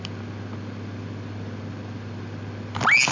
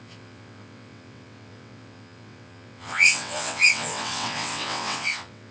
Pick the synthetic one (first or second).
second